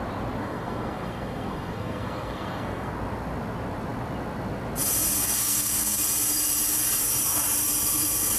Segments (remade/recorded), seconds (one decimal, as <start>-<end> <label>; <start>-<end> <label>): 0.0-0.4 recorded; 0.4-2.9 remade; 2.9-5.2 recorded; 5.2-6.0 remade; 6.0-8.4 recorded